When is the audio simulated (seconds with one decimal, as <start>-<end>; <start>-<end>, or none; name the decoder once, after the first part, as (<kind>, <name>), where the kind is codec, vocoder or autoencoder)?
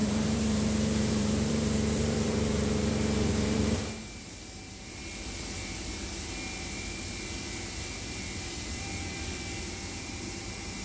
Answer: 0.0-5.0 (vocoder, BigVGAN v2); 10.0-10.8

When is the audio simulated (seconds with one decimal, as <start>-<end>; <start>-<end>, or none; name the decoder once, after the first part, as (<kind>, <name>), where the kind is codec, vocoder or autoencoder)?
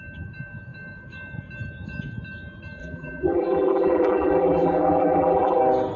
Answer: 2.8-5.6 (vocoder, BigVGAN v2)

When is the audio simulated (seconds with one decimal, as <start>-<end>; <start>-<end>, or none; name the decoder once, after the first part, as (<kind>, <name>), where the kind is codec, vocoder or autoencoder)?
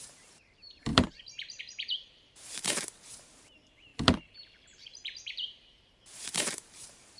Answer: 0.0-3.9 (vocoder, BigVGAN v2); 4.7-7.2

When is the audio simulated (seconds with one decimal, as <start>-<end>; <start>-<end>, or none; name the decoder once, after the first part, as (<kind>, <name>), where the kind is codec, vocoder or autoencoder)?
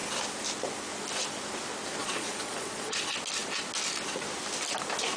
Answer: 2.0-3.0 (vocoder, Vocos)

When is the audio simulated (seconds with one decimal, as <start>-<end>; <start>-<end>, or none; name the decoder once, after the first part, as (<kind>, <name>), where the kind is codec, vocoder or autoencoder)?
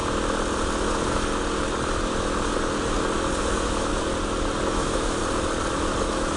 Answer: 3.4-3.9 (autoencoder, DAC-VAE); 4.7-5.2; 6.0-6.4